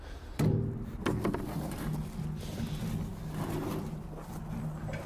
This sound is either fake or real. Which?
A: real